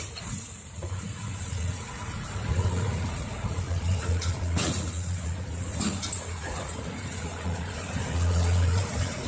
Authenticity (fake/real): fake